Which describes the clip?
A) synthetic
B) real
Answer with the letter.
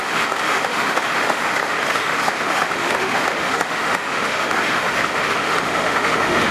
A